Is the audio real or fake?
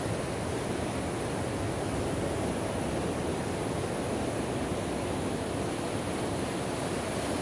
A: real